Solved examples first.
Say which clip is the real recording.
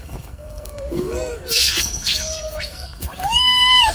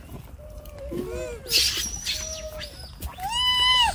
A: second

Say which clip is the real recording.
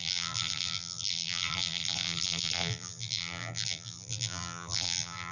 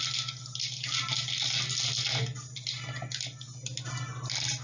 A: second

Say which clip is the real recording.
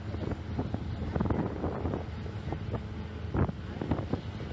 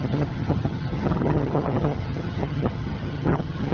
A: first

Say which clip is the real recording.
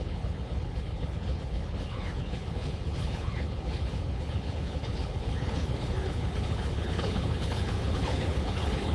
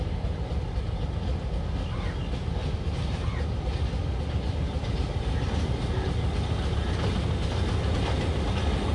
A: second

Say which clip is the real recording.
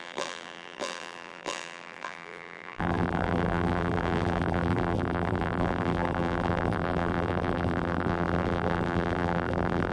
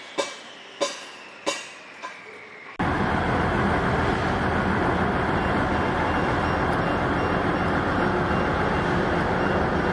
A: second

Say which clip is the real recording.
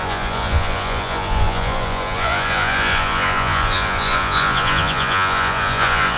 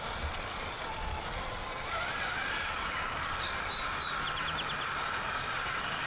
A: second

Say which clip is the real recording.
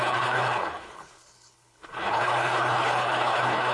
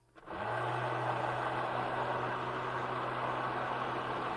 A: second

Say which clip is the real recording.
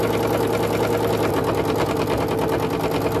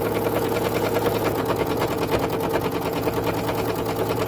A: first